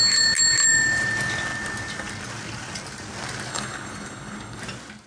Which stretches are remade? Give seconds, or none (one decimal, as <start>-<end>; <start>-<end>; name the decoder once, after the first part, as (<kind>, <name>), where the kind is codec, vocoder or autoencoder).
3.5-4.6 (codec, HILCodec)